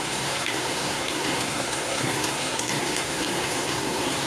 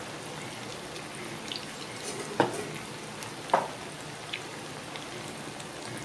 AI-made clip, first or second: first